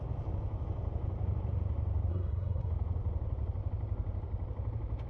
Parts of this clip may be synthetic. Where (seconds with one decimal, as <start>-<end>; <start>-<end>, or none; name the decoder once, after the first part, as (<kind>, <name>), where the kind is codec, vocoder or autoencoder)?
2.1-2.7 (codec, SNAC)